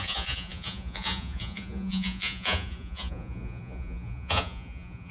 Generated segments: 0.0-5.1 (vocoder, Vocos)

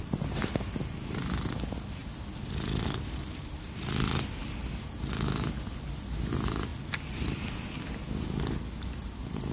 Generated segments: none

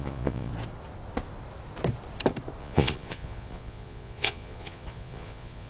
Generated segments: 0.0-0.5 (vocoder, Vocos); 2.6-5.7